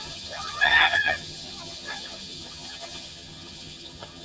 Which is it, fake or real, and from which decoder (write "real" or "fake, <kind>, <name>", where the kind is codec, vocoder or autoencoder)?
fake, vocoder, HiFi-GAN